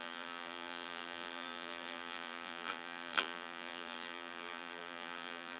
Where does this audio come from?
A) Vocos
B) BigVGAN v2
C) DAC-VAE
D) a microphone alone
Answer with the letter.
B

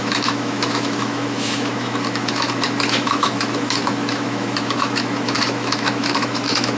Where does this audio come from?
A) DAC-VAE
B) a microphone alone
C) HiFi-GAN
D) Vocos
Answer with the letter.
A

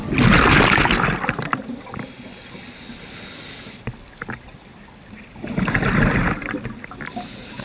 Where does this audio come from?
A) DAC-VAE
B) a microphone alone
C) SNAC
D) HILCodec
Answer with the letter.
B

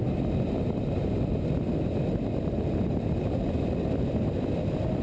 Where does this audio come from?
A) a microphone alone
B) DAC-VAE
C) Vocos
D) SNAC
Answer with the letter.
A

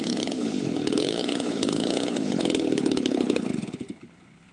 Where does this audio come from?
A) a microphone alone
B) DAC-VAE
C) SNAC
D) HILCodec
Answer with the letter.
D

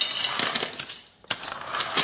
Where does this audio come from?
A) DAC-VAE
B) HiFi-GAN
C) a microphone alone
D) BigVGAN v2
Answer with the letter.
D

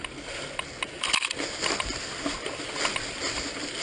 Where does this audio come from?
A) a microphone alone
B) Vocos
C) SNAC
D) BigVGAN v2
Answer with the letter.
A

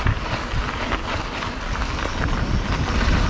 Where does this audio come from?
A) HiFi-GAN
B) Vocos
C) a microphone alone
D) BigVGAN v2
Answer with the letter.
C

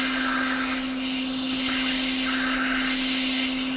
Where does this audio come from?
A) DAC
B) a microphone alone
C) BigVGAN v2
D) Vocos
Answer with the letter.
B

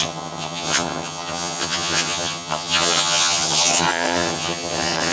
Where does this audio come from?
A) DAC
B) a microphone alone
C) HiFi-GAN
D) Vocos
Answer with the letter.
C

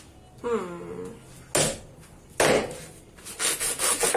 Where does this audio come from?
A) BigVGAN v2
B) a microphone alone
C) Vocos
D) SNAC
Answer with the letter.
B